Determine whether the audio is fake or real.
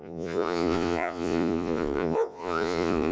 fake